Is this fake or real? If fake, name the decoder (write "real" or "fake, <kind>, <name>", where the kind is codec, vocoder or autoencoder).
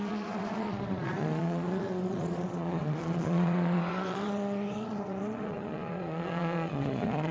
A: fake, vocoder, Vocos